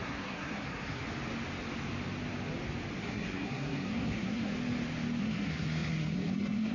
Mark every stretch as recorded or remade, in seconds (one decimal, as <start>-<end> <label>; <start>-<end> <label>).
0.0-1.0 remade; 1.0-3.0 recorded; 3.0-4.5 remade; 4.5-5.2 recorded; 5.2-6.7 remade